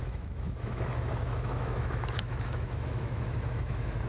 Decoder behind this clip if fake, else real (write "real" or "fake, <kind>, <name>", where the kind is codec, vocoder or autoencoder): fake, autoencoder, DAC-VAE